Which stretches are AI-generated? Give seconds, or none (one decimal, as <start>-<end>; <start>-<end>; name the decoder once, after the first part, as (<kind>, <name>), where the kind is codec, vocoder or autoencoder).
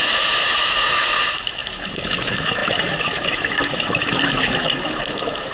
0.0-5.5 (autoencoder, DAC-VAE)